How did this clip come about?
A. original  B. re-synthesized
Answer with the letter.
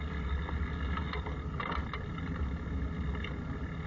A